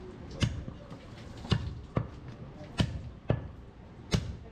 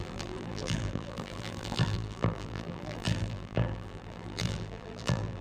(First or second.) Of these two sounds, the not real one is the second